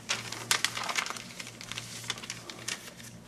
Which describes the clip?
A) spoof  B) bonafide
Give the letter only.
B